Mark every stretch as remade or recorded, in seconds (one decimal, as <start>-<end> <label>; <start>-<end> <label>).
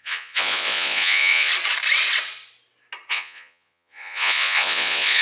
0.0-1.5 remade; 1.5-3.1 recorded; 3.1-5.2 remade